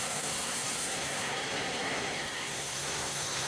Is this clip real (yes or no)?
no